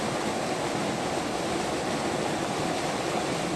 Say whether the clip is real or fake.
real